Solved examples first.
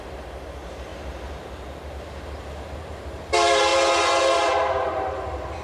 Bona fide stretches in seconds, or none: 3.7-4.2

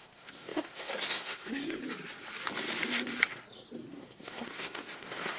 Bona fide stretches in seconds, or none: 1.8-3.9